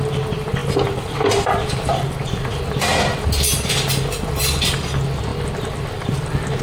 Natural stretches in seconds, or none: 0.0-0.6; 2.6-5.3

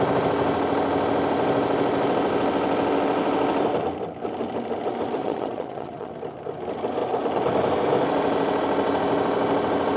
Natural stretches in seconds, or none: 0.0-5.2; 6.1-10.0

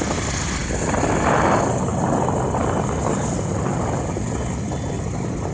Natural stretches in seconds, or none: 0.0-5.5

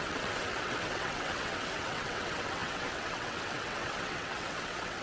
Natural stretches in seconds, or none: none

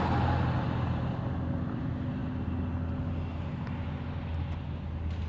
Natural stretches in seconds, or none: 0.0-5.3

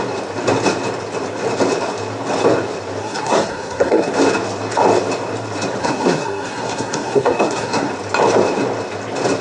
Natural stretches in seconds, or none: 0.0-3.0; 4.1-5.8; 7.9-9.4